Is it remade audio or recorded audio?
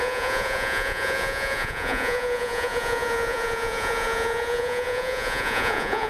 remade